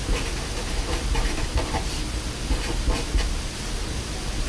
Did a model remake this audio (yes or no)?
no